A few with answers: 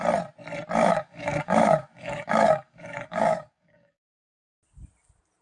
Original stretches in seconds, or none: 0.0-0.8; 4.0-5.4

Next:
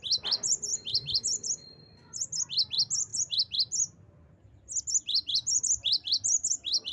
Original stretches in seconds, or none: 0.0-6.9